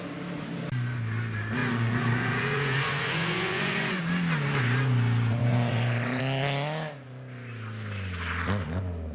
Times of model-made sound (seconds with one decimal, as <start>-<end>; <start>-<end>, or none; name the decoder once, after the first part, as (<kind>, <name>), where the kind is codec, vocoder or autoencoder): 1.6-4.0 (vocoder, Vocos); 5.4-6.2